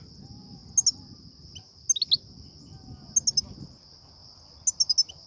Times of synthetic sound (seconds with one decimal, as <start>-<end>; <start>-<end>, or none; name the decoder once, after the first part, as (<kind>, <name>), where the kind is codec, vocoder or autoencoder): none